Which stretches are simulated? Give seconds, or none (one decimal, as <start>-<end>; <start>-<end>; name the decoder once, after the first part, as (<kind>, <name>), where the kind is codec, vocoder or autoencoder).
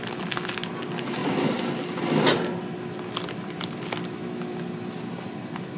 none